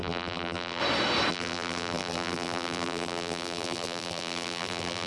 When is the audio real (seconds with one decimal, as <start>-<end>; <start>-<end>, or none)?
0.8-1.3